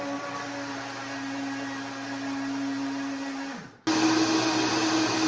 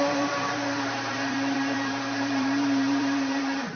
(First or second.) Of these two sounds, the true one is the first